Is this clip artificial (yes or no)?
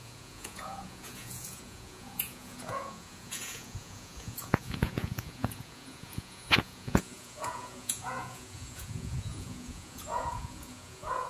yes